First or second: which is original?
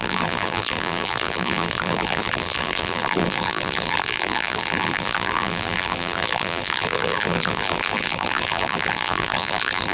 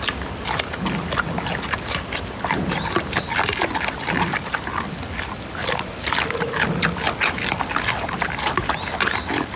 second